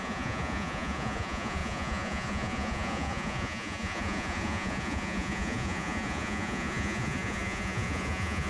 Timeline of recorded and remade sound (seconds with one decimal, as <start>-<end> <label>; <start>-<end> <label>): 0.0-8.5 remade